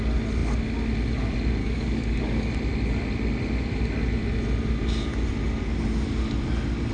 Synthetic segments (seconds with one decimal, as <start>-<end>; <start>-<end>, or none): 1.6-2.5